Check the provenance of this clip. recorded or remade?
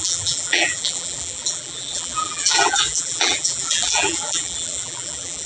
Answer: remade